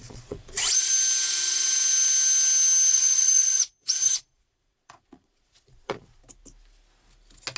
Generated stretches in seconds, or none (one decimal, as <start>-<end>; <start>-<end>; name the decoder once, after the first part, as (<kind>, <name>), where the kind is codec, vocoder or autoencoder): 0.0-0.9 (vocoder, Vocos); 2.9-6.2